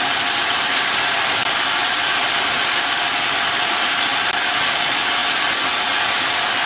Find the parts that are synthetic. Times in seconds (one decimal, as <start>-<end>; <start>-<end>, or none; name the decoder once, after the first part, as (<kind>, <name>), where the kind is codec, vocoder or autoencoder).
none